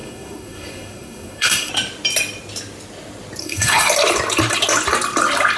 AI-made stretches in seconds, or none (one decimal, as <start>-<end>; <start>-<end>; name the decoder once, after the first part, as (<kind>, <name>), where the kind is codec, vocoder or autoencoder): 0.0-1.7 (codec, SNAC); 3.4-3.9